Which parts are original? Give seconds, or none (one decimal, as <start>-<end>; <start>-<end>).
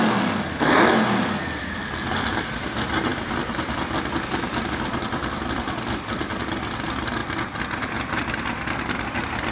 0.0-9.5